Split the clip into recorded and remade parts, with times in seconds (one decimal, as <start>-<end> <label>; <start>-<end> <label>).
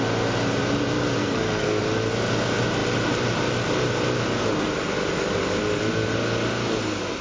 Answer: 0.0-1.2 recorded; 1.2-1.8 remade; 1.8-7.2 recorded